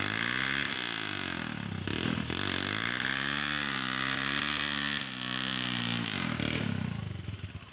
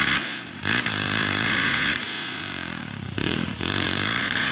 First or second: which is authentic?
first